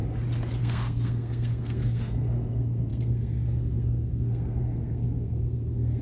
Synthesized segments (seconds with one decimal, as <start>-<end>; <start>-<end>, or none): 0.6-6.0